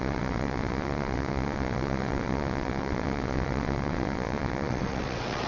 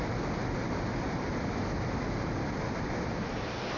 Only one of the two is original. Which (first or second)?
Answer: second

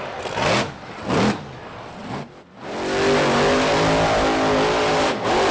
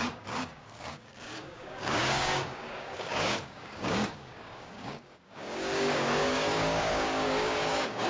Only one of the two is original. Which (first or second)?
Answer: first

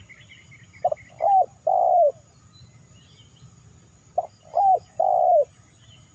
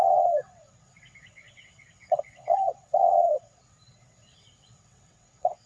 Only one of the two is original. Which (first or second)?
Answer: first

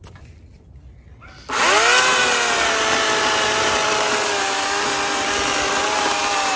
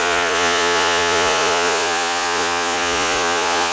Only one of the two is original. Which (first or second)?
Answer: first